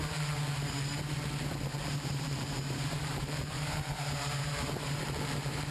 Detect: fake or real fake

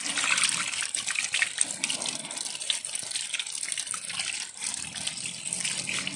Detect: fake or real fake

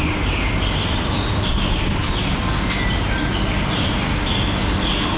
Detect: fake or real real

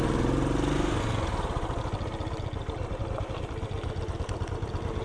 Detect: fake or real real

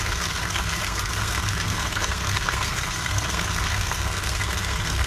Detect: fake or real fake